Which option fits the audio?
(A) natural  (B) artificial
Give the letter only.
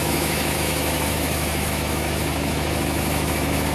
B